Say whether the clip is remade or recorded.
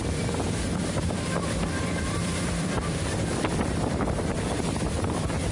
remade